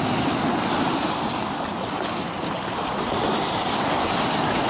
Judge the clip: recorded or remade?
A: recorded